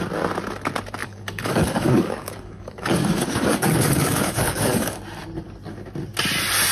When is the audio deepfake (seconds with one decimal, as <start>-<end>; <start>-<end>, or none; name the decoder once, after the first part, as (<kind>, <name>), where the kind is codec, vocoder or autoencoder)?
1.0-5.0 (codec, DAC)